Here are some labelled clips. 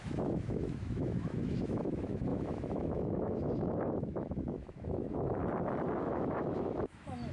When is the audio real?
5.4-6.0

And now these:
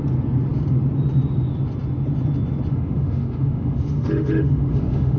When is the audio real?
0.0-2.7

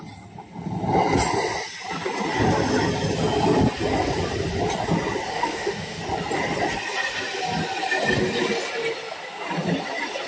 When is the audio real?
0.0-5.3; 6.0-10.3

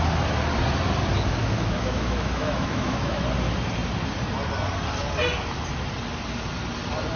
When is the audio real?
0.0-1.4; 3.2-7.2

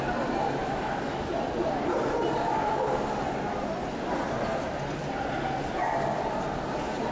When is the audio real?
0.0-0.6; 1.3-7.1

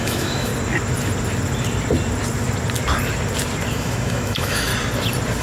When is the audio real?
0.5-3.7; 4.7-5.4

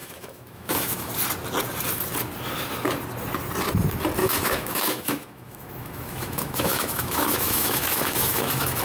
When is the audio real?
1.1-4.2

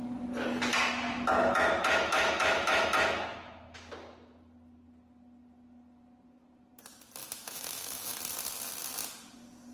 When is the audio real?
0.0-1.4; 3.9-7.2; 8.2-9.7